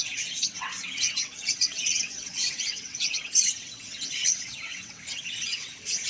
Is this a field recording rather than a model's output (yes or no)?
no